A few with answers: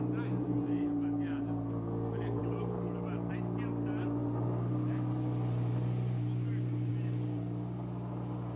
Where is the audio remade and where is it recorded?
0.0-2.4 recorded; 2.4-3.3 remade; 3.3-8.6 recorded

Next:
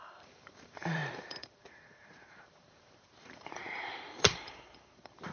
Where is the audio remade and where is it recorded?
0.0-5.3 remade

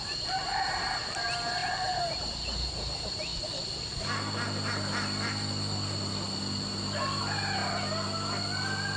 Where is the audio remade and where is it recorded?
0.0-3.3 remade; 3.3-6.4 recorded; 6.4-7.6 remade; 7.6-9.0 recorded

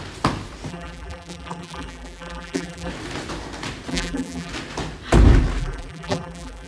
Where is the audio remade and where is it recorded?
0.0-0.7 recorded; 0.7-2.9 remade; 2.9-3.9 recorded; 3.9-4.5 remade; 4.5-5.6 recorded; 5.6-6.7 remade

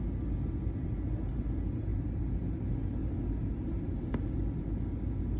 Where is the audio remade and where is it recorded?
0.0-0.8 recorded; 0.8-1.4 remade; 1.4-3.0 recorded; 3.0-4.3 remade; 4.3-5.4 recorded

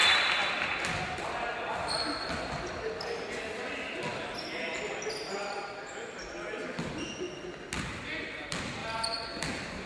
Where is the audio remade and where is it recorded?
0.0-9.9 recorded

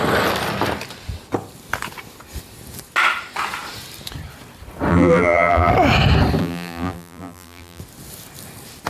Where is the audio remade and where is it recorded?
0.0-4.9 recorded; 4.9-5.7 remade; 5.7-6.4 recorded; 6.4-7.8 remade; 7.8-8.9 recorded